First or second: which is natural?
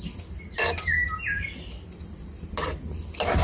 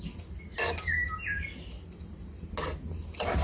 second